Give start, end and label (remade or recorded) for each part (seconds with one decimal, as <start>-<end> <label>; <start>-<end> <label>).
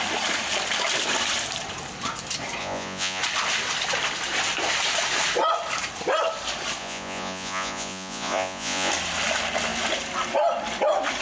0.0-2.6 recorded; 2.6-3.2 remade; 3.2-6.8 recorded; 6.8-8.9 remade; 8.9-11.2 recorded